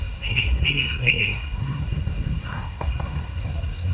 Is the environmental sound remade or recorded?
remade